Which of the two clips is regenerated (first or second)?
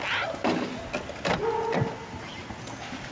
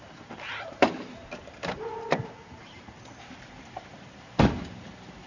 second